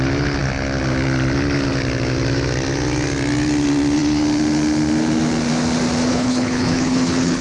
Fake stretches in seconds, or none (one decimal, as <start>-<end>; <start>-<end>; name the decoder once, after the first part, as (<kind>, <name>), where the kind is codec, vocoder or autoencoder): 6.1-7.4 (codec, HILCodec)